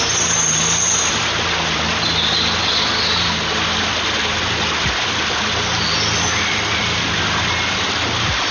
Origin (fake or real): real